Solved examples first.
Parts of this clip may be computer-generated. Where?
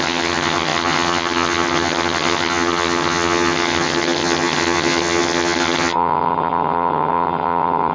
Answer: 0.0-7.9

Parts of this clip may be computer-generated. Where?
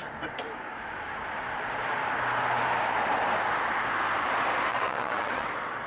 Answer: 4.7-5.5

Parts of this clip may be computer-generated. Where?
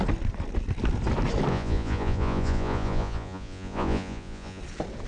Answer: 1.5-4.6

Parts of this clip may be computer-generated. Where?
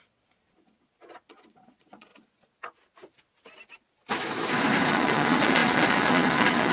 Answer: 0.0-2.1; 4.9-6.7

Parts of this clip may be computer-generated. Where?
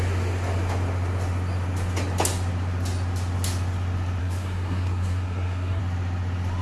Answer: 4.2-5.8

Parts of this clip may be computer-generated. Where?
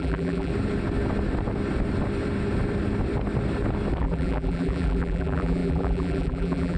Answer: 0.0-0.5; 4.0-6.8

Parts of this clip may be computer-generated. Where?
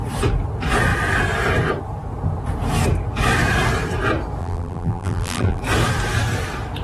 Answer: 4.4-5.6